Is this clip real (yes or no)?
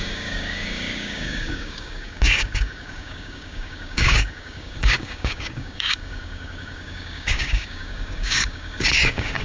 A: no